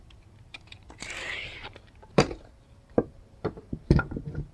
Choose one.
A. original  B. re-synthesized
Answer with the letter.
B